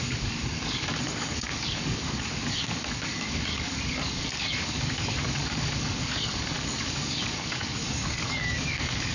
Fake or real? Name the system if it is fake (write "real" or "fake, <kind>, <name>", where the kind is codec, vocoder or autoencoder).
fake, codec, DAC